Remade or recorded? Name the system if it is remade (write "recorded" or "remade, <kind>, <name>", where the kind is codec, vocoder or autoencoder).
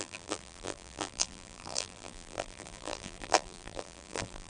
remade, vocoder, BigVGAN v2